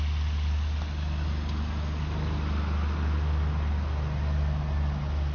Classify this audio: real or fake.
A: real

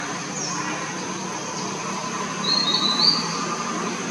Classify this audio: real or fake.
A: real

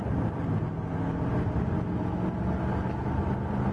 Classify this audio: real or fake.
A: real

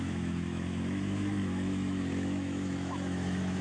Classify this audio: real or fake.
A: fake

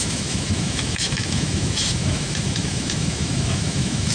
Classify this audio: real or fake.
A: fake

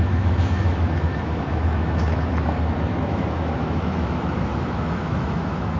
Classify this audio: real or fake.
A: fake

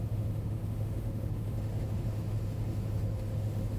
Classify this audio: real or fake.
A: fake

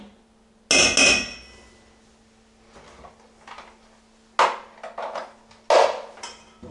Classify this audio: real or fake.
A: real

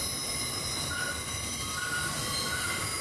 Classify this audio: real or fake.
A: real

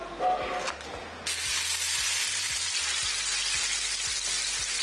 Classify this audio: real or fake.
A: real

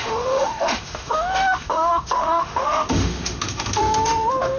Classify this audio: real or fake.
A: fake